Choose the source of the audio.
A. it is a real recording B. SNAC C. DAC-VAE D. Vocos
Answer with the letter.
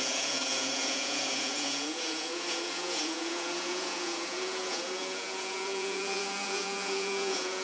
D